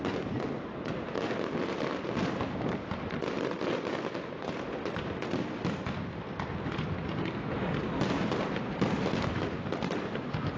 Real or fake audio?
real